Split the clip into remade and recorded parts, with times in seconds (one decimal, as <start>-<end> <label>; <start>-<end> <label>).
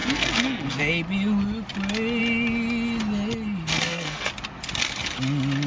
0.0-0.8 remade; 0.8-3.7 recorded; 3.7-4.3 remade; 4.3-5.7 recorded